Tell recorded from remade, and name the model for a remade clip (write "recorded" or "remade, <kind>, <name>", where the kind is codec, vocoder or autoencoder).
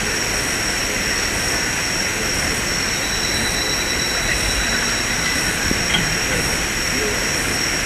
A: recorded